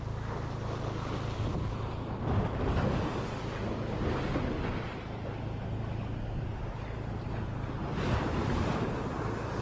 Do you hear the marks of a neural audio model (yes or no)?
no